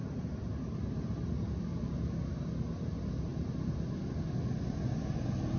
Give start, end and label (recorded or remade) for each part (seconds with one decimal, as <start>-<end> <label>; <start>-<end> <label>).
0.0-5.6 recorded